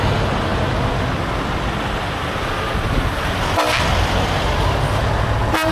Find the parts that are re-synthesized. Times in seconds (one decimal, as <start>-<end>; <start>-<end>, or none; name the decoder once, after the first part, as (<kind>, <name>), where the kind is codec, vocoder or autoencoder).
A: none